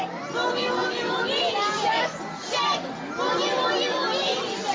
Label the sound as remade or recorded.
recorded